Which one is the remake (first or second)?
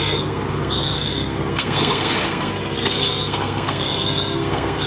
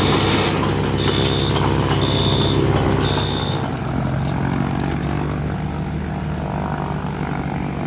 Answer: first